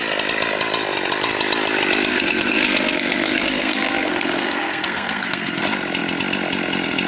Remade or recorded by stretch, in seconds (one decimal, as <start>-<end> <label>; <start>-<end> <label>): 0.0-2.1 recorded; 2.1-5.6 remade; 5.6-7.1 recorded

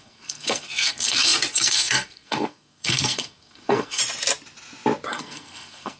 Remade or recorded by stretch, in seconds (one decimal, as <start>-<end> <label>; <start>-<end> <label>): 0.0-4.0 remade; 4.0-5.1 recorded; 5.1-6.0 remade

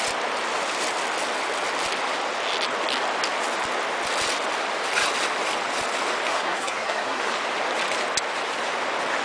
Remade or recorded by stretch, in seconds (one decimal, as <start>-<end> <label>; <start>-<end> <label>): 0.0-6.3 recorded; 6.3-7.3 remade; 7.3-9.2 recorded

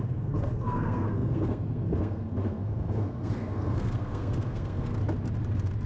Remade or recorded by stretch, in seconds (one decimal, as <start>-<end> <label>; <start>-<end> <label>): 0.0-5.0 remade; 5.0-5.9 recorded

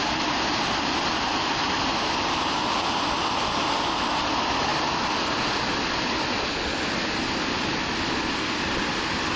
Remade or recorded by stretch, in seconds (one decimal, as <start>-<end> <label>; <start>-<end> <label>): 0.0-9.4 recorded